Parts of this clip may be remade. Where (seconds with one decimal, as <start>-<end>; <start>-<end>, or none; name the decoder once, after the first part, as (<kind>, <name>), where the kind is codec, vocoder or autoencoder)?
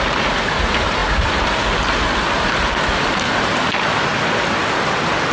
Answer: none